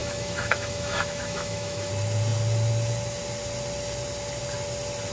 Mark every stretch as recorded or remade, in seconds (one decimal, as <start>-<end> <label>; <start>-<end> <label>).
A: 0.0-1.9 remade; 1.9-5.1 recorded